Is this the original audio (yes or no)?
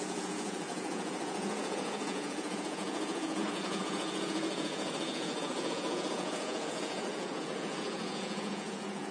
no